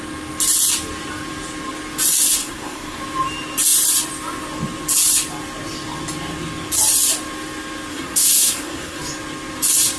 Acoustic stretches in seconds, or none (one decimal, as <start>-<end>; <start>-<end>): 0.0-2.4; 3.0-7.9; 9.0-10.0